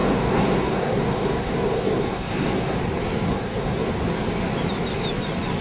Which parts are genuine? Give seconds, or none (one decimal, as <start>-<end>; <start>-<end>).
2.8-3.3; 3.9-5.6